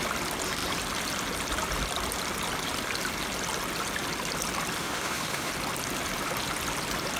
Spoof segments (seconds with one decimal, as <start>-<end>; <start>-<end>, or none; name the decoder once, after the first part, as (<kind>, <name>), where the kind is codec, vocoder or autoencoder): 4.8-5.5 (autoencoder, DAC-VAE)